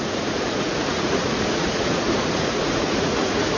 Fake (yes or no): yes